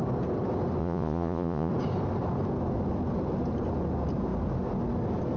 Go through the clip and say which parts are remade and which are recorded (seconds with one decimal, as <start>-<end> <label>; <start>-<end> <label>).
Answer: 0.0-0.8 recorded; 0.8-1.7 remade; 1.7-5.4 recorded

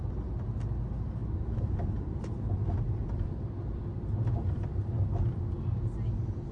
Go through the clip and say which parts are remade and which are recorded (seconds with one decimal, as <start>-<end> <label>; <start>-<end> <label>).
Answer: 0.0-6.5 recorded

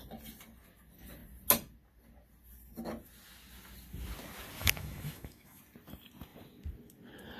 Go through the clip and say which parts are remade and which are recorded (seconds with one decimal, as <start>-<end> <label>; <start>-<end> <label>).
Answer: 0.0-4.6 recorded; 4.6-5.6 remade; 5.6-7.4 recorded

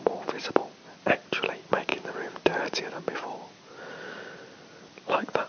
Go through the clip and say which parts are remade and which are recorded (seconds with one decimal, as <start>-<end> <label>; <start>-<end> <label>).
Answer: 0.0-1.9 recorded; 1.9-2.8 remade; 2.8-5.5 recorded

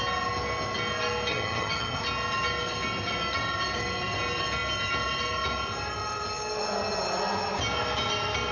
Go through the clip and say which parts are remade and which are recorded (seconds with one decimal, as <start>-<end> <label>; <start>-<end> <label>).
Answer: 0.0-1.3 recorded; 1.3-2.0 remade; 2.0-8.5 recorded